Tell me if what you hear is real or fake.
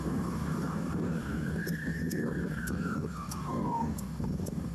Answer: fake